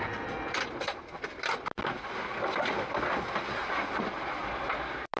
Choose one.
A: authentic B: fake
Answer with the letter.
A